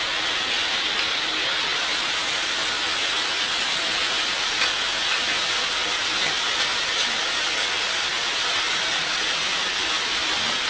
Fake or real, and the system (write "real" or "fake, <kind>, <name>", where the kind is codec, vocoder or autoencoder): real